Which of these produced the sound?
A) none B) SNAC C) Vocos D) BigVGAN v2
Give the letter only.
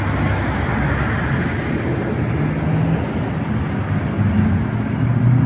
A